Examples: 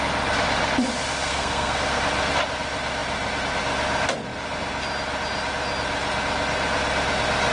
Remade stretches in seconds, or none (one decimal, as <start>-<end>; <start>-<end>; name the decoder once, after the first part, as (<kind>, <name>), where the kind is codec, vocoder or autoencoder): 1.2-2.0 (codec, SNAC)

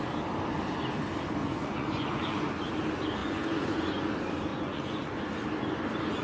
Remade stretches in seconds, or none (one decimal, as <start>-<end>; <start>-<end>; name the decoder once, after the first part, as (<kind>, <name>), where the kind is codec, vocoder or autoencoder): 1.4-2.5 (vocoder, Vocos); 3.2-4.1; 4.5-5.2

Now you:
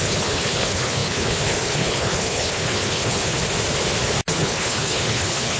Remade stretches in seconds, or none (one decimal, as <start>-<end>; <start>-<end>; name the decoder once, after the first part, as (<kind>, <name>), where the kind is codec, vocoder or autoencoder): 0.0-3.4 (codec, HILCodec); 4.3-5.6

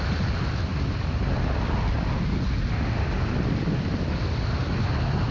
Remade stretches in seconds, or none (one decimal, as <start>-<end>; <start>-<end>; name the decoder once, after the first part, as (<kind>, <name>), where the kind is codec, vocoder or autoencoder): none

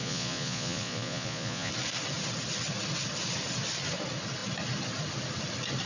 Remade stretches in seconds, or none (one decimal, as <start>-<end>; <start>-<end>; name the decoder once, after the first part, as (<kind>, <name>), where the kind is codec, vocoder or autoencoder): 0.0-1.7 (vocoder, Vocos)

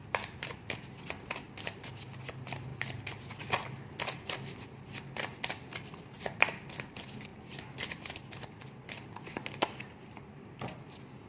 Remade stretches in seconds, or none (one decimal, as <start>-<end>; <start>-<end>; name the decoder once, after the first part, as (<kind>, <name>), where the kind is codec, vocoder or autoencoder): none